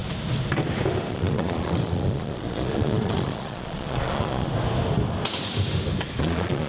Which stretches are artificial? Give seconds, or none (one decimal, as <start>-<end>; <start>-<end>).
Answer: 1.1-4.5; 6.2-6.7